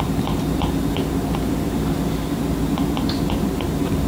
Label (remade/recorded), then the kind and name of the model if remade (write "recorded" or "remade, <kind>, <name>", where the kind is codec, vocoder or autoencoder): remade, vocoder, BigVGAN v2